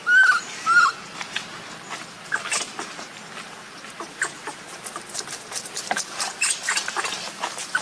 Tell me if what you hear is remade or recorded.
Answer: recorded